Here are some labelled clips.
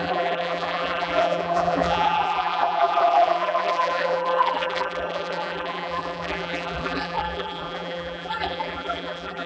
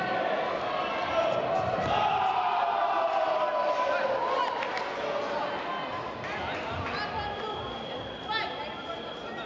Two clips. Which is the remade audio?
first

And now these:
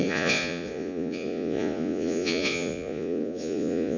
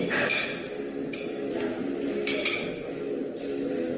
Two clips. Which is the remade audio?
first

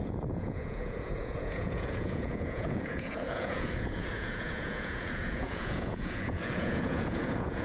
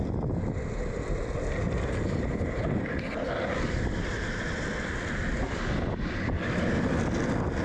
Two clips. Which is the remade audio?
first